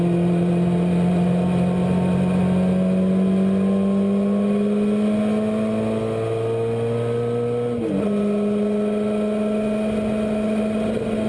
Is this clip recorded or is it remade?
recorded